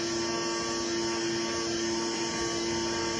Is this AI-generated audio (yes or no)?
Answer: no